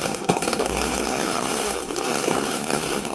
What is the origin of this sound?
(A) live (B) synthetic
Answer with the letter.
B